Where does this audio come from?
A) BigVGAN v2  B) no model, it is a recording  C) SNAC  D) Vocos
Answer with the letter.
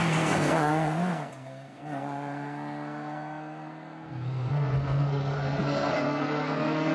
C